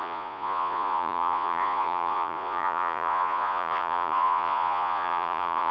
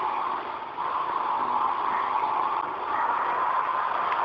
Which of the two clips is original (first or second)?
second